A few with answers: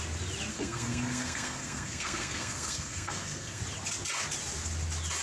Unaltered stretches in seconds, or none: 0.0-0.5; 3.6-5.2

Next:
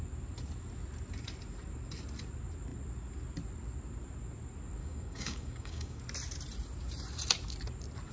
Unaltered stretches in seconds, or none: 0.0-4.8; 6.0-8.1

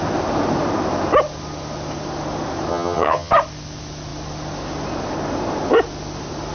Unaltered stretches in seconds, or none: 0.0-2.7; 3.3-6.5

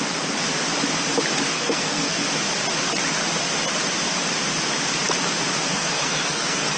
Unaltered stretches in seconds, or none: 0.0-1.5; 2.2-5.7

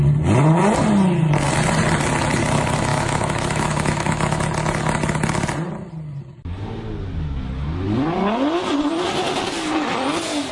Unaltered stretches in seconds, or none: 0.0-2.9; 4.4-10.5

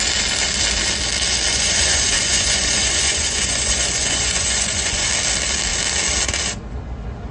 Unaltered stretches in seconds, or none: 0.0-1.5; 5.1-7.3

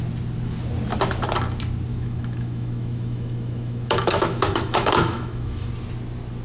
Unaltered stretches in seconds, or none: 0.0-1.9; 5.7-6.4